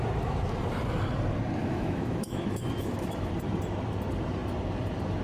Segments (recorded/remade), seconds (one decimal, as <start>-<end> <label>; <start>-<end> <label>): 0.0-1.6 recorded; 1.6-3.3 remade; 3.3-5.2 recorded